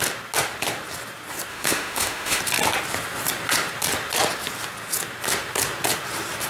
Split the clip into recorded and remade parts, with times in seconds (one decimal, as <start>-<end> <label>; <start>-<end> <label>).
0.0-1.5 recorded; 1.5-2.4 remade; 2.4-6.5 recorded